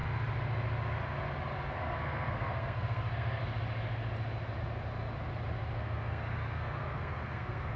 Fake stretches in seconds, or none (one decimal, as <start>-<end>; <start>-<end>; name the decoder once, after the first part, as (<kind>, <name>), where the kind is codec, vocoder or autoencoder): 1.7-3.4 (codec, SNAC); 5.6-7.8